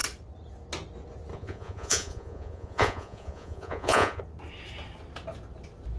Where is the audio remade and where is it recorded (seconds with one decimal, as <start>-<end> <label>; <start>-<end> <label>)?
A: 0.0-1.3 recorded; 1.3-4.2 remade; 4.2-6.0 recorded

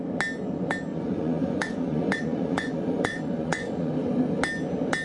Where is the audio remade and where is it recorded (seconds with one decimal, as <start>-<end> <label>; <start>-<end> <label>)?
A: 0.0-0.9 recorded; 0.9-3.9 remade; 3.9-5.0 recorded

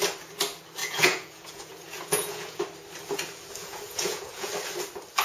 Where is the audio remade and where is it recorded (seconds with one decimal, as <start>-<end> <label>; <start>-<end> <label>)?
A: 0.0-0.8 recorded; 0.8-2.6 remade; 2.6-3.6 recorded; 3.6-4.5 remade; 4.5-5.2 recorded